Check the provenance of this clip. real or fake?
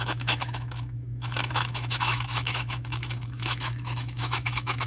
fake